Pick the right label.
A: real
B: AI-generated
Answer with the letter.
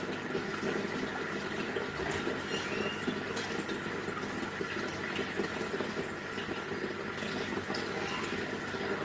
A